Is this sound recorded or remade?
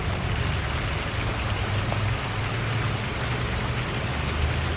recorded